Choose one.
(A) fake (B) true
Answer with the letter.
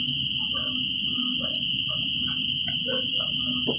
B